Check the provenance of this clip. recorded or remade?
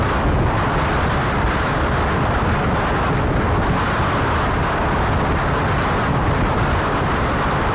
recorded